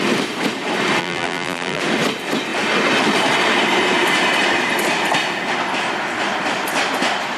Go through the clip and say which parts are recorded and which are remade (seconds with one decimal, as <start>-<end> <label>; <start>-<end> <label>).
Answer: 0.0-1.0 recorded; 1.0-1.8 remade; 1.8-7.4 recorded